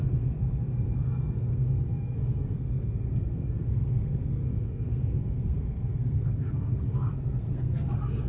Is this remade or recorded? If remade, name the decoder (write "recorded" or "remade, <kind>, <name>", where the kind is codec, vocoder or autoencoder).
remade, codec, SNAC